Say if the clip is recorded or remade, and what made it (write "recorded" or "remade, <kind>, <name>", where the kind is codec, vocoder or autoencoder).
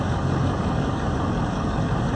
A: remade, codec, DAC